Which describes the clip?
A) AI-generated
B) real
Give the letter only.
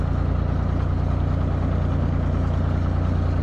B